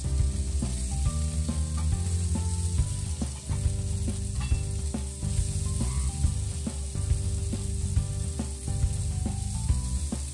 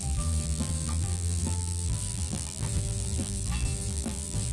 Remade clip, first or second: second